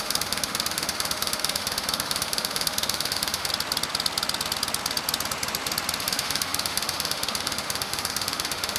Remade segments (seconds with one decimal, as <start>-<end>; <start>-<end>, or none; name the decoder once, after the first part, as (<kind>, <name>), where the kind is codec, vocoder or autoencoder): 0.0-3.5 (autoencoder, DAC-VAE); 6.0-8.8